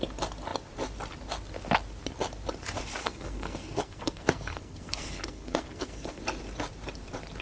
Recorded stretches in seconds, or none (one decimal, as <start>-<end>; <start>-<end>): 0.0-3.0; 6.2-7.4